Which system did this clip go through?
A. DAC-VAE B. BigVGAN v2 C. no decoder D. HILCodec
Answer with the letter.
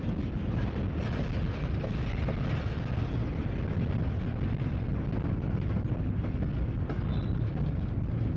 C